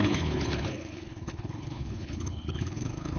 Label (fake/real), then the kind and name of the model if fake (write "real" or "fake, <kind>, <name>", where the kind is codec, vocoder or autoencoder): fake, codec, HILCodec